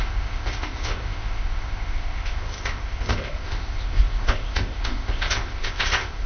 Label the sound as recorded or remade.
remade